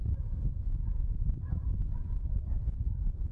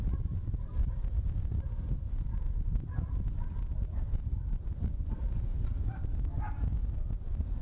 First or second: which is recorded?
second